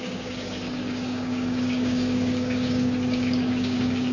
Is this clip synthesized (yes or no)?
yes